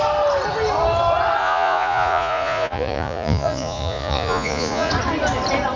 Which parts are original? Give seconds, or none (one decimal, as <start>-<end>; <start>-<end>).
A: 0.0-1.4; 4.9-5.8